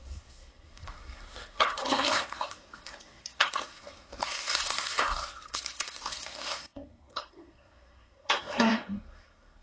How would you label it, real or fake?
fake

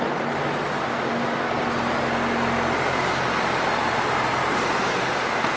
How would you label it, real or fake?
real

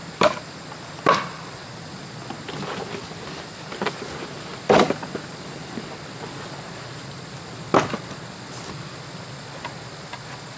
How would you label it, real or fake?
real